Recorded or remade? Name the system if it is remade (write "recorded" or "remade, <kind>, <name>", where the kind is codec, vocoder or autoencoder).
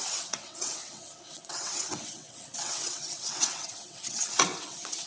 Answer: remade, vocoder, WaveNeXt